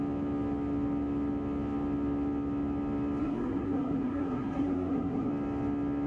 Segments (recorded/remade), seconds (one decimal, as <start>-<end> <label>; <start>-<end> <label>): 0.0-3.2 recorded; 3.2-5.3 remade; 5.3-6.1 recorded